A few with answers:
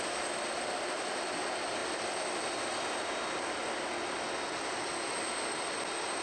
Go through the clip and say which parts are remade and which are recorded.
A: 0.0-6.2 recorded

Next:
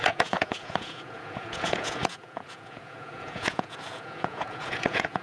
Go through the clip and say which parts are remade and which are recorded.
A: 0.0-5.2 remade

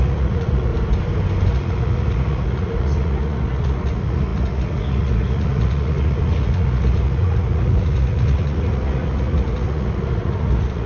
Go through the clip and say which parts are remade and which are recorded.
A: 0.0-0.7 remade; 0.7-1.5 recorded; 1.5-10.9 remade

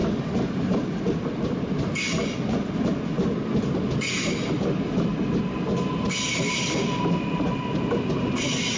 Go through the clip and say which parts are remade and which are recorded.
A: 0.0-8.8 recorded

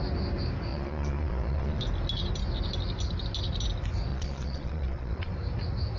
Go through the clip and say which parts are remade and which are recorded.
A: 0.0-0.7 recorded; 0.7-1.8 remade; 1.8-4.1 recorded; 4.1-5.3 remade; 5.3-6.0 recorded

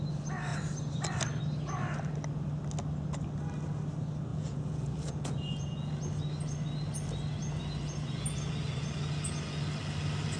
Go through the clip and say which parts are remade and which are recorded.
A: 0.0-4.3 recorded; 4.3-6.0 remade; 6.0-10.4 recorded

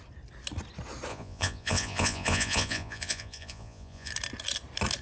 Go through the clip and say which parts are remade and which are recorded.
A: 0.0-1.1 recorded; 1.1-4.1 remade; 4.1-5.0 recorded

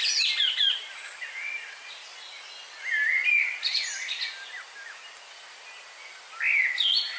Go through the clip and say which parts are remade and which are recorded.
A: 0.0-7.2 recorded